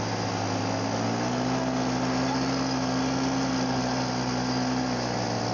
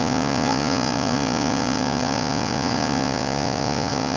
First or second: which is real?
first